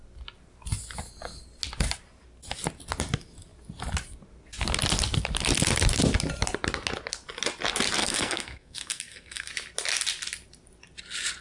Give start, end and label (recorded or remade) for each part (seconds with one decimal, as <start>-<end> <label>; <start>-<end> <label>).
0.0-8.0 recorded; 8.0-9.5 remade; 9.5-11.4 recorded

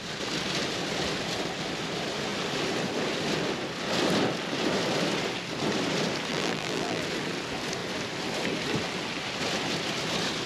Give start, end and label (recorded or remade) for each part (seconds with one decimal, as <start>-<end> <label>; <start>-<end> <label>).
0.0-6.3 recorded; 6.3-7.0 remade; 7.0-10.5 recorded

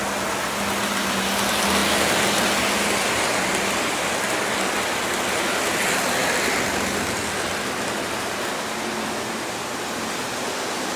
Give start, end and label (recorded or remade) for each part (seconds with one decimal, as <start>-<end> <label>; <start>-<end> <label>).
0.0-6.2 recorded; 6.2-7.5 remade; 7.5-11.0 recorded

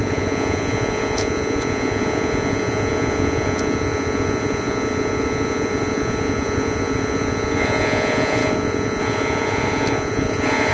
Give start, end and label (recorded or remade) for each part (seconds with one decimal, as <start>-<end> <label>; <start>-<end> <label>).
0.0-10.7 remade

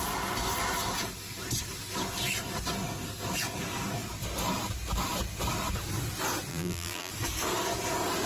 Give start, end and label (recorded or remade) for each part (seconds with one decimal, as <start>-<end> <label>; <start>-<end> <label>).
0.0-6.5 recorded; 6.5-7.1 remade; 7.1-8.3 recorded

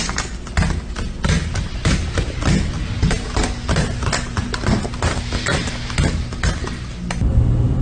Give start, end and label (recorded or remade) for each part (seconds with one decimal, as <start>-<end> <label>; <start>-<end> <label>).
0.0-7.8 recorded

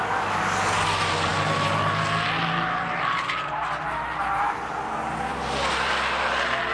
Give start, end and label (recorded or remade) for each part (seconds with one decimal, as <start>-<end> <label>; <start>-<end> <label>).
0.0-6.7 recorded

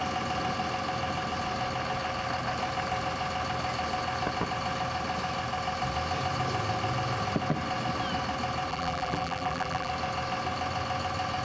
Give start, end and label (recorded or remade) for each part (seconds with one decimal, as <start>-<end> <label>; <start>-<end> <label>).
0.0-8.7 recorded; 8.7-9.9 remade; 9.9-11.4 recorded